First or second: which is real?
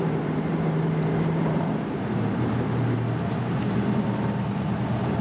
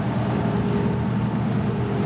second